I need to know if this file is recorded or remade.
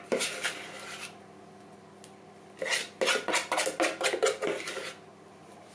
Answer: recorded